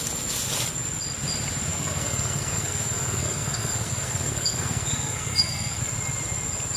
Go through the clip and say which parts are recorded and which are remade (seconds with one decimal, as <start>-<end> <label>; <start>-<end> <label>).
0.0-1.7 recorded; 1.7-5.8 remade; 5.8-6.8 recorded